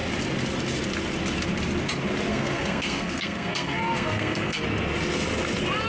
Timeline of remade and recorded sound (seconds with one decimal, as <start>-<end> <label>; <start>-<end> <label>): 0.0-2.3 recorded; 2.3-4.6 remade; 4.6-5.9 recorded